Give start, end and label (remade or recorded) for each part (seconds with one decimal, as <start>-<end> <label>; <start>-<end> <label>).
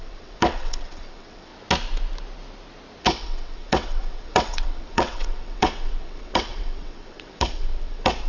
0.0-1.5 remade; 1.5-3.0 recorded; 3.0-8.3 remade